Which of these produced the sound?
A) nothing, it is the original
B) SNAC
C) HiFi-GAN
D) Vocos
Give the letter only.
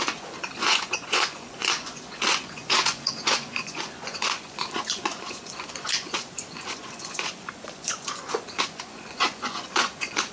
D